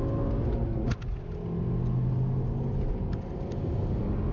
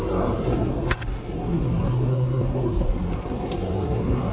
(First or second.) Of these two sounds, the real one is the first